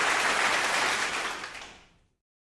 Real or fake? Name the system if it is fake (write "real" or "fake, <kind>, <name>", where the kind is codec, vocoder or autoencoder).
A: real